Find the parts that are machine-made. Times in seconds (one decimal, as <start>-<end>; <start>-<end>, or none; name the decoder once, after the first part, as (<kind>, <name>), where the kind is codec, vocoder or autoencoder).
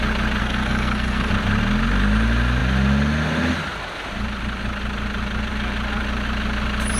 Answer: 0.4-1.3 (codec, SNAC)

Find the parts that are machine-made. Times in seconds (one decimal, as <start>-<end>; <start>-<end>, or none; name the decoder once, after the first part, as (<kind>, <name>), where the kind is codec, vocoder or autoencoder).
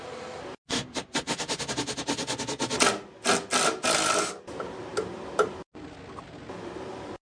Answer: none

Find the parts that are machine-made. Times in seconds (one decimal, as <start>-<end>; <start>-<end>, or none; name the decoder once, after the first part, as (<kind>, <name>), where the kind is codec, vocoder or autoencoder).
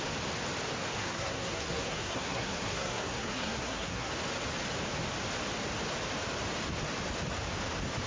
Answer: 1.0-4.1 (codec, SNAC)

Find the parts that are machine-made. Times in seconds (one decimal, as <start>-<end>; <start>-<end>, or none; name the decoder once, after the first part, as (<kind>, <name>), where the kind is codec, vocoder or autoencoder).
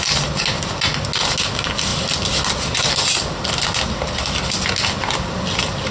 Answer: none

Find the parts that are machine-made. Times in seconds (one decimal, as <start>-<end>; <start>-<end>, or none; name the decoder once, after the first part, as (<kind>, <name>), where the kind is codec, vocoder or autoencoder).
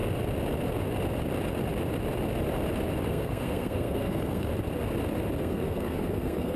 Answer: 3.1-4.5 (codec, SNAC); 5.4-6.6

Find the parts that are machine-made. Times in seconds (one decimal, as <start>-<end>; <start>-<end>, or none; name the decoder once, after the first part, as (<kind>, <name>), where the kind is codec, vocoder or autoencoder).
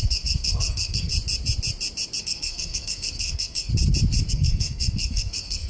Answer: 0.0-1.1 (codec, SNAC); 2.2-3.7; 4.3-5.7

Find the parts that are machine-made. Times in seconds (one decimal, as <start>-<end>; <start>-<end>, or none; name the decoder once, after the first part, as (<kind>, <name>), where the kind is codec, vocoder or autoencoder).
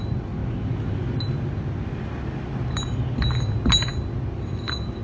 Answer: none